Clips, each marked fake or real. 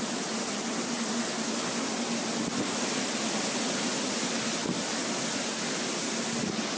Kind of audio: real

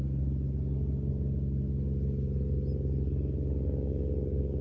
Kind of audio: real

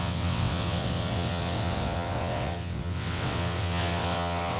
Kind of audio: fake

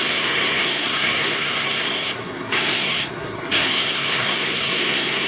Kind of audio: fake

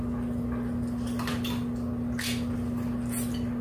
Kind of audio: real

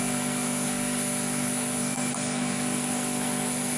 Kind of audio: fake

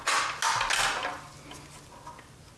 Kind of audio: real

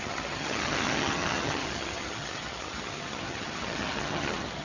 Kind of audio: fake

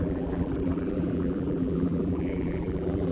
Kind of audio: fake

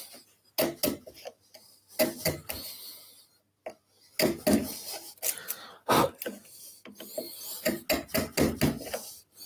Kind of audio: real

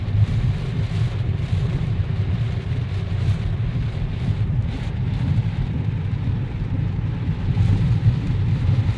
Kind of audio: fake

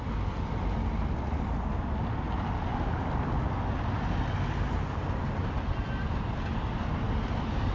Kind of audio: real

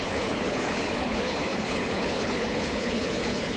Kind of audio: fake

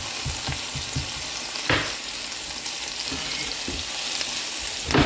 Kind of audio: real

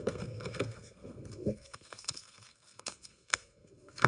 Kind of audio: fake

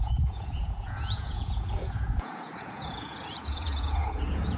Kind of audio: fake